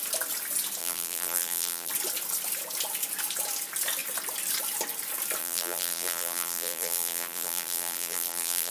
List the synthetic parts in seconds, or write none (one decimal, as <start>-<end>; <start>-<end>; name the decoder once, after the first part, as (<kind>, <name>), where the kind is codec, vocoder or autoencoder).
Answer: 0.8-1.9 (vocoder, BigVGAN v2); 5.4-8.7